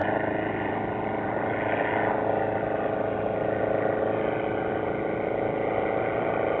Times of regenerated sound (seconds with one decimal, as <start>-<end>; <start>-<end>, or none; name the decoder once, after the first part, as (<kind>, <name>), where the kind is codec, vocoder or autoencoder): none